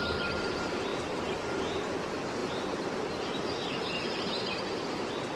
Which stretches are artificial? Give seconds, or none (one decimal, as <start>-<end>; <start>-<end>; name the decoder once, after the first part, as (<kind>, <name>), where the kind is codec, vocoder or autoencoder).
0.0-0.9 (vocoder, BigVGAN v2); 1.6-5.4